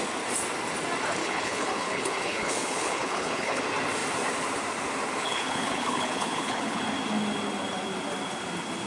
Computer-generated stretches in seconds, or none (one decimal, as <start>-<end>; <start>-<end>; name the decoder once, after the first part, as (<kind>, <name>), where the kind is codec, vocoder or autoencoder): 1.2-3.6 (codec, HILCodec); 5.2-6.8